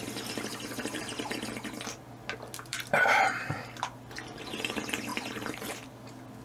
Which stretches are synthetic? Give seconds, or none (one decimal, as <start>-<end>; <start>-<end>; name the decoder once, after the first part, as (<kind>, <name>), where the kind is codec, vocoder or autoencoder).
2.7-3.5 (vocoder, BigVGAN v2); 5.1-5.9